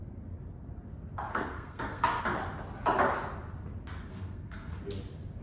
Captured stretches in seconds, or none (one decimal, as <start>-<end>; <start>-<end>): 0.0-1.3; 2.2-4.1; 4.8-5.4